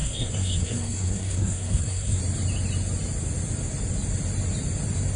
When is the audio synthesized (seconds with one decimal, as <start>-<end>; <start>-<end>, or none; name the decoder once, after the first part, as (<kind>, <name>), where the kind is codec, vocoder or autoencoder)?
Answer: 0.0-2.2 (codec, SNAC)